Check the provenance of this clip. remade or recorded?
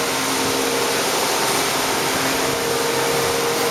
recorded